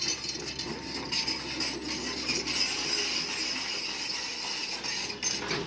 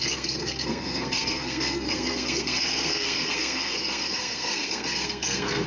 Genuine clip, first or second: first